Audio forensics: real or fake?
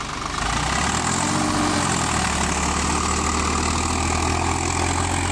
real